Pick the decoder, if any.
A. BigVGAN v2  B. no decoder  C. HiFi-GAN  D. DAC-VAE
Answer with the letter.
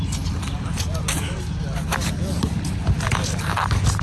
B